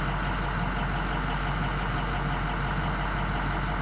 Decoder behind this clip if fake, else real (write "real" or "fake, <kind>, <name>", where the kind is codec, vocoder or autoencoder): real